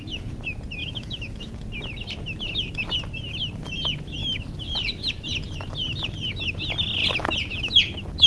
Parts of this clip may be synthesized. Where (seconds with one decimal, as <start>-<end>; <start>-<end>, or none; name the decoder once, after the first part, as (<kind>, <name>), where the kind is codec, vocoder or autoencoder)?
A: 0.8-1.5 (autoencoder, DAC-VAE)